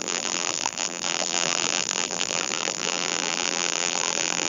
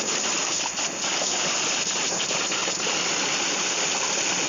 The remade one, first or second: first